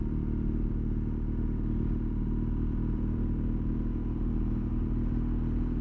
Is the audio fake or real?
real